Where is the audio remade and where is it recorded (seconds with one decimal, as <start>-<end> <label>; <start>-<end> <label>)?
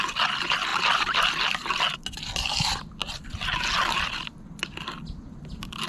0.0-5.9 recorded